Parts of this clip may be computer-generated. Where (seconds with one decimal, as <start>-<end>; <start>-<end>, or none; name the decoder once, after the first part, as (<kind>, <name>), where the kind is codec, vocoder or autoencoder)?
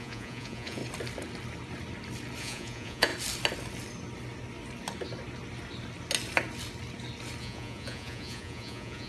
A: 0.0-0.8 (vocoder, Vocos); 2.4-3.1; 7.4-9.1